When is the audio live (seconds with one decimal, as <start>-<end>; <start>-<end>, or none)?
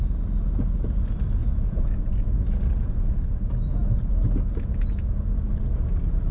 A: 0.0-1.4; 5.2-6.3